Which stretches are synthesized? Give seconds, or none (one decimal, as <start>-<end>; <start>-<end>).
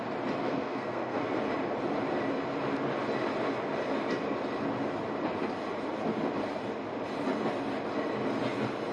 0.4-1.4